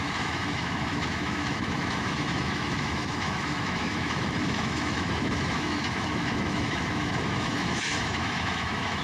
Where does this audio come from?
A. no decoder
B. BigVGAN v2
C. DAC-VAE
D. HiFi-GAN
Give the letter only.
C